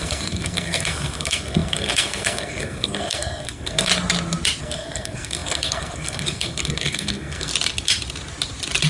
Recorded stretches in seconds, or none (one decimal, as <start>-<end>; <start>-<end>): 3.9-4.6; 7.5-8.9